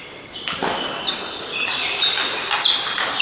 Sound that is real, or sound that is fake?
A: real